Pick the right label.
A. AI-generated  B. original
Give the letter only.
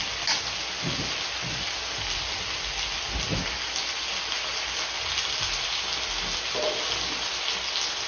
B